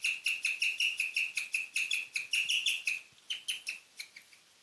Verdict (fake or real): real